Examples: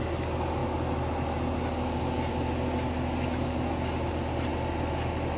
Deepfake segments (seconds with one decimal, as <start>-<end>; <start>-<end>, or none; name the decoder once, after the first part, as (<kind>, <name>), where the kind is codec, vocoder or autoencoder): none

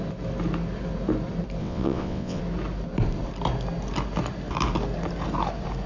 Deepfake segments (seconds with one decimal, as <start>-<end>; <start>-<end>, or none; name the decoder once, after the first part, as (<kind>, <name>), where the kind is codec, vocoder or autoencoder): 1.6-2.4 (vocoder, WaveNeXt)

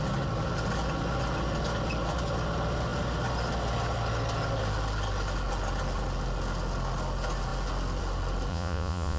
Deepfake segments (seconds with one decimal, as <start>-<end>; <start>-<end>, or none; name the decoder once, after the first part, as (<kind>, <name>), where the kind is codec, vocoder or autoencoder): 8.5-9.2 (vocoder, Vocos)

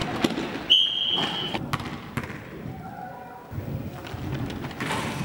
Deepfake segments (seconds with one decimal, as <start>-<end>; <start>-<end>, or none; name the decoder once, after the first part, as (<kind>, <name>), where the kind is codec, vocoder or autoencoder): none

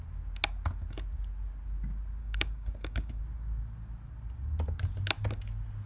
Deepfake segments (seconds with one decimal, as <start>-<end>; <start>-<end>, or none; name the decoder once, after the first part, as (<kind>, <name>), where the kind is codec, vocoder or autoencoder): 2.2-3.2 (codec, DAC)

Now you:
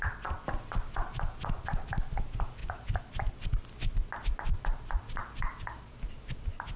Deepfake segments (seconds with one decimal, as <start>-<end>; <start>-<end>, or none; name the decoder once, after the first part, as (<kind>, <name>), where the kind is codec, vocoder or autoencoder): none

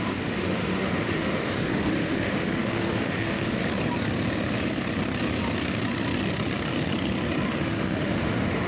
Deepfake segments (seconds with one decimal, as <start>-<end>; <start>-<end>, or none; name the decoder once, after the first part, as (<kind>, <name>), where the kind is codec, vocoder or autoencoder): 0.0-3.6 (autoencoder, DAC-VAE); 7.6-8.7